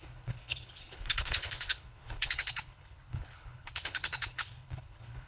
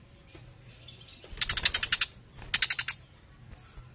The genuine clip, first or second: second